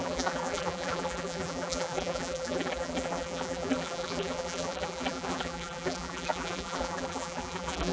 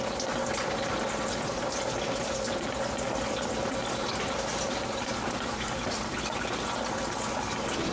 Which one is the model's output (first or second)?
first